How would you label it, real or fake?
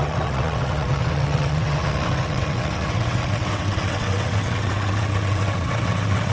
fake